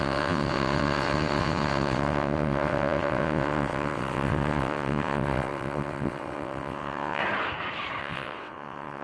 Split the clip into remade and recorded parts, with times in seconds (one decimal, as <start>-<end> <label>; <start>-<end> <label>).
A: 0.0-7.2 remade; 7.2-8.0 recorded; 8.0-9.0 remade